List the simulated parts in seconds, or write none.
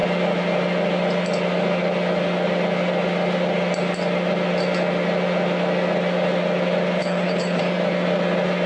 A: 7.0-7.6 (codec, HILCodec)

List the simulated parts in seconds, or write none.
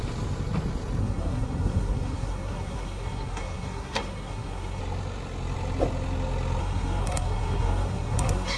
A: 1.0-4.8 (codec, SNAC); 6.6-8.6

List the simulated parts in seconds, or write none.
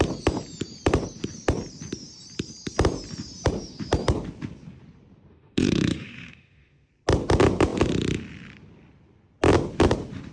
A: 5.3-6.9 (autoencoder, DAC-VAE)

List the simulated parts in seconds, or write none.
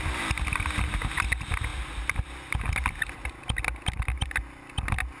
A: none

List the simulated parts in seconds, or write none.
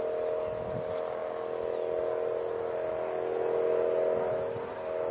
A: none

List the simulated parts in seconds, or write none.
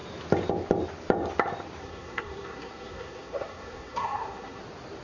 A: 1.8-4.6 (codec, SNAC)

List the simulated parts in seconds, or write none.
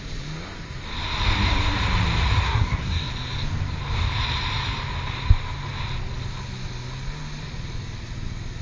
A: 2.4-3.1 (codec, SNAC)